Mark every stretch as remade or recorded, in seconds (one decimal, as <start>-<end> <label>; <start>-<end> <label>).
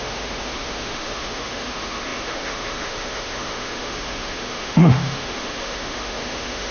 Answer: 0.0-6.7 remade